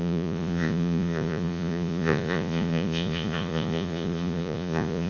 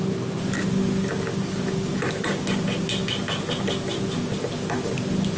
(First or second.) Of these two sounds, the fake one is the first